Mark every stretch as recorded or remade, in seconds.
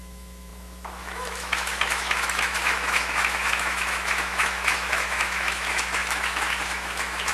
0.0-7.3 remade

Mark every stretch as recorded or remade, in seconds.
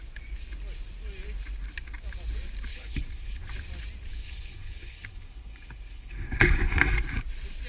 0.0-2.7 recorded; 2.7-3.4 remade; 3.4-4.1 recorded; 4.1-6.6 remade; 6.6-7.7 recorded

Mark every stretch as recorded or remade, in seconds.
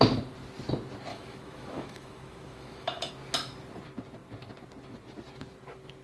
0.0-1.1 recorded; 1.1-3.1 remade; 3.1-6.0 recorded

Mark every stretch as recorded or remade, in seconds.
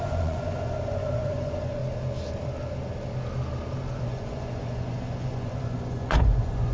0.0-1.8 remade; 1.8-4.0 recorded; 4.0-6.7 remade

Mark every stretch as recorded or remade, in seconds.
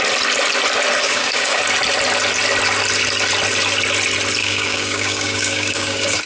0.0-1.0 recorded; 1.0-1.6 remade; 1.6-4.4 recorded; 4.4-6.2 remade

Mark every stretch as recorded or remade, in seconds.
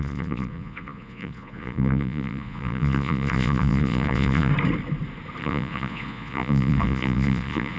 0.0-4.5 remade; 4.5-5.4 recorded; 5.4-7.8 remade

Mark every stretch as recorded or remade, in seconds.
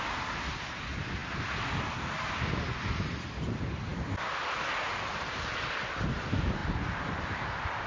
0.0-7.9 recorded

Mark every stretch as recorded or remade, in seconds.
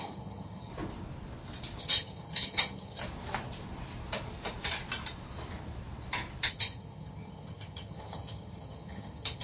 0.0-0.7 remade; 0.7-1.8 recorded; 1.8-3.0 remade; 3.0-6.5 recorded; 6.5-9.4 remade